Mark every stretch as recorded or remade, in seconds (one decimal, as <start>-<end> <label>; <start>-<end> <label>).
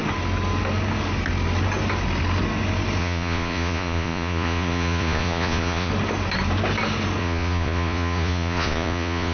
0.0-3.0 recorded; 3.0-5.9 remade; 5.9-7.2 recorded; 7.2-9.3 remade